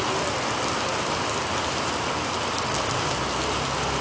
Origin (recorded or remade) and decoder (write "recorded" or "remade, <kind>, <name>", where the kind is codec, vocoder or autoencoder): recorded